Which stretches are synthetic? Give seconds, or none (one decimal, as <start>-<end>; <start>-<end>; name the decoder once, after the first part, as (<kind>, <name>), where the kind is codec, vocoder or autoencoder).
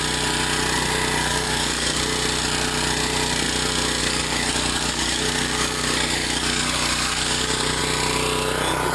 1.3-2.0 (codec, DAC); 4.0-7.8